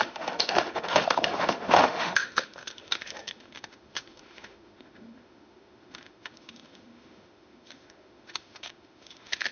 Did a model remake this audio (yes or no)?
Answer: yes